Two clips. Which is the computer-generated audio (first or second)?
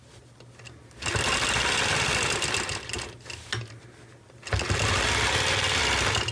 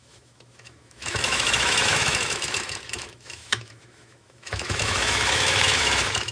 second